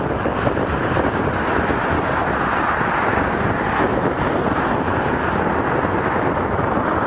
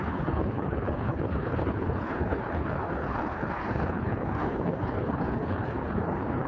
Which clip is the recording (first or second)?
first